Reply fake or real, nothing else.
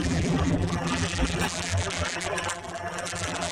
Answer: fake